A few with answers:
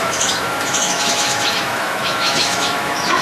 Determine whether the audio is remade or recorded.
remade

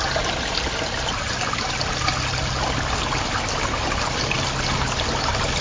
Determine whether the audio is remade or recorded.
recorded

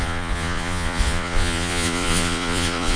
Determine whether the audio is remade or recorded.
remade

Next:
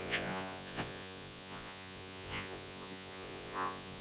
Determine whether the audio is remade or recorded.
remade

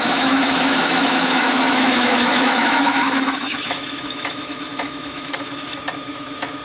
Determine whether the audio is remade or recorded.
remade